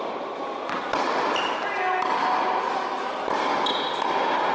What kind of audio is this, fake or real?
real